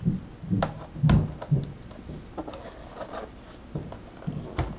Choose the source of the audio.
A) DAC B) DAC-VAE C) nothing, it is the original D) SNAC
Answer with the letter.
C